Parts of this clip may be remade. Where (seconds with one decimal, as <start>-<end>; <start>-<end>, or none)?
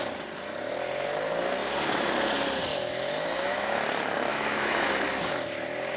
2.7-3.8; 4.3-4.9